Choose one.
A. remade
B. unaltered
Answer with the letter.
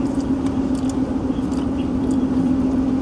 B